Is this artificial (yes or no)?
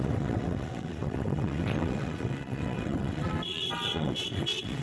yes